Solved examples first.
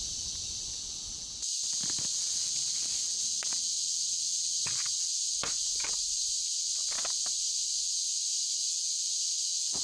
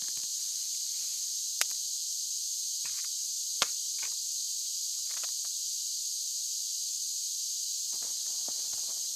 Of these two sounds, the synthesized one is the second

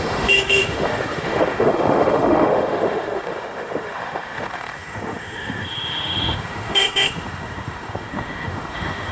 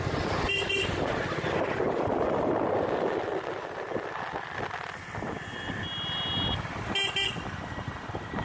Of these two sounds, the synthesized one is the first